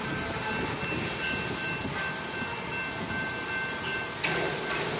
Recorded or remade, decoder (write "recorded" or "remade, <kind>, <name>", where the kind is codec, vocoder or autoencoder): recorded